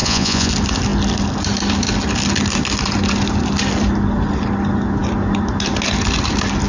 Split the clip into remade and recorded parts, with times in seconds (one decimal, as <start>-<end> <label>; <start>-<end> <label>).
0.0-0.5 remade; 0.5-6.7 recorded